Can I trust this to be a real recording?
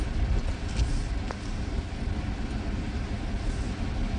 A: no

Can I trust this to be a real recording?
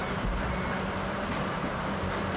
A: no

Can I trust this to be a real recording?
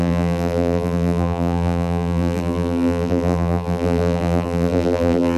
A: no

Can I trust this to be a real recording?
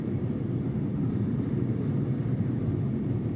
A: no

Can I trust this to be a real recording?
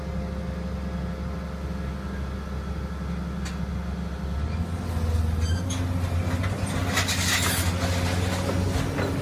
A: yes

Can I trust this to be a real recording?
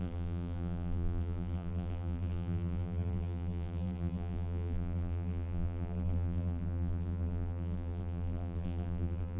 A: no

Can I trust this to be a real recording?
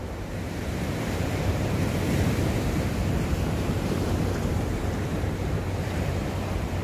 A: no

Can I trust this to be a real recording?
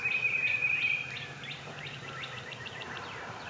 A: no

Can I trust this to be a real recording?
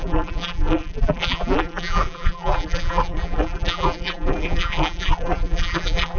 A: no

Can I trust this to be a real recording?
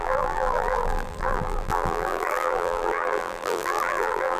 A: no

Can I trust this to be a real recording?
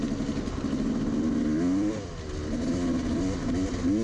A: yes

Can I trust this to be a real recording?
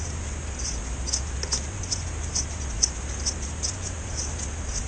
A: yes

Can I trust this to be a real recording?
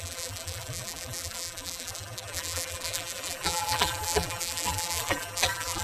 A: no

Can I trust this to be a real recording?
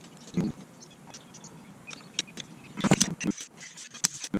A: yes